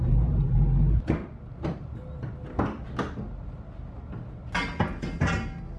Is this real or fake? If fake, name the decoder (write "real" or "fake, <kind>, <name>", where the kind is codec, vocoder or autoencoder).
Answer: real